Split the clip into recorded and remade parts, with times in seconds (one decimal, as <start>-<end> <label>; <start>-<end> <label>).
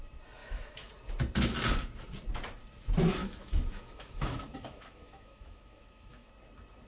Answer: 0.0-0.4 recorded; 0.4-0.9 remade; 0.9-3.2 recorded; 3.2-6.3 remade; 6.3-6.9 recorded